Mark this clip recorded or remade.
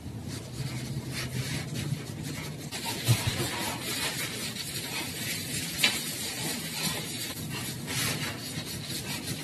recorded